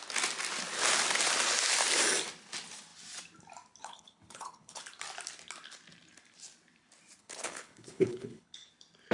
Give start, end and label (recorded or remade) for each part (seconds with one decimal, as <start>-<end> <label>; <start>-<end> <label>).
0.0-3.8 recorded; 3.8-4.8 remade; 4.8-7.2 recorded; 7.2-8.7 remade; 8.7-9.1 recorded